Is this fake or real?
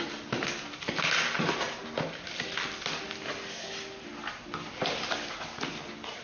real